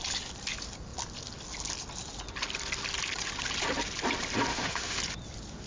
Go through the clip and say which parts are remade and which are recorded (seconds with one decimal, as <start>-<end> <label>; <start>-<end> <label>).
0.0-4.5 recorded; 4.5-5.0 remade; 5.0-5.7 recorded